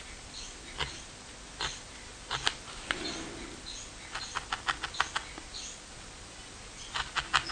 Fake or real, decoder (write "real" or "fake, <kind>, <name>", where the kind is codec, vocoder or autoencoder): real